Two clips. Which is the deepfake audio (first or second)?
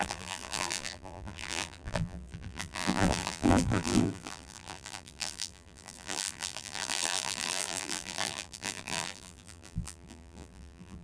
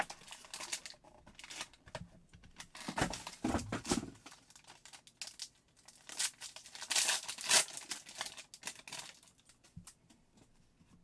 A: first